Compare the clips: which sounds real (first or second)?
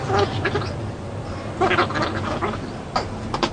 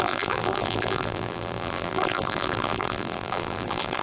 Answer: first